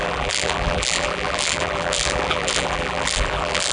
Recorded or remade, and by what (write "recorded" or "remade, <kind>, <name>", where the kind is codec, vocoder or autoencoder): remade, vocoder, BigVGAN v2